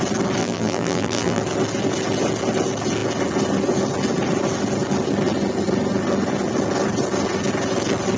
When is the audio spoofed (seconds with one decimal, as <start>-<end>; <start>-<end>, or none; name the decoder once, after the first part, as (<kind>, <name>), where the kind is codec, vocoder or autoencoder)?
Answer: 0.4-1.4 (vocoder, BigVGAN v2)